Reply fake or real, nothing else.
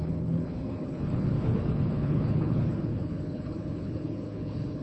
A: fake